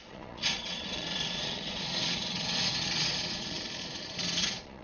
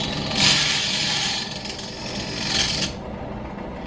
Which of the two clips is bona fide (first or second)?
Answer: second